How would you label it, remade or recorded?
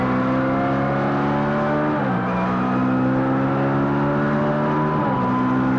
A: recorded